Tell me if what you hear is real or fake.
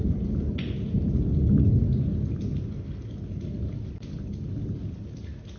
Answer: real